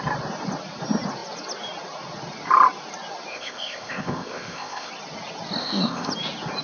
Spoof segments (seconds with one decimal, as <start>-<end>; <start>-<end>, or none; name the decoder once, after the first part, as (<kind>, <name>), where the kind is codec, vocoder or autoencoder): 3.3-4.9 (codec, ZipCodec); 5.6-6.1